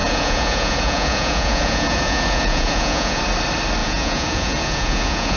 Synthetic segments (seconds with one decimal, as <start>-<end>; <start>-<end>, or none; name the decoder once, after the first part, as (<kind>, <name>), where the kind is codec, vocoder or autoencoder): 0.0-3.2 (vocoder, Vocos); 3.8-5.4